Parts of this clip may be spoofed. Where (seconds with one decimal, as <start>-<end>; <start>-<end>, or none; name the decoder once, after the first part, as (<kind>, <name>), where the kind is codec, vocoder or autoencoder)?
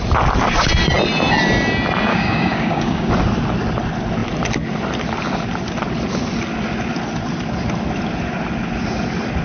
2.1-3.1 (codec, DAC)